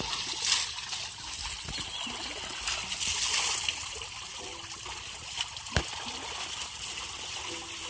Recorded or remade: recorded